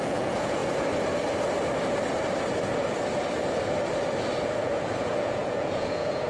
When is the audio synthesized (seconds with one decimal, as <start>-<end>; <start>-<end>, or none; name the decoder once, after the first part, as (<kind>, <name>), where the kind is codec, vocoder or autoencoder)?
0.0-0.6 (vocoder, Vocos); 4.4-6.3